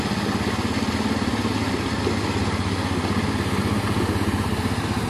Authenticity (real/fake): real